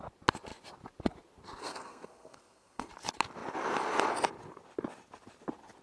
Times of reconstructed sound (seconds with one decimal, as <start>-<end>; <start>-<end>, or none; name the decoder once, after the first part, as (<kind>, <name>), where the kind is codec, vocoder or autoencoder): 1.6-2.9 (codec, SNAC)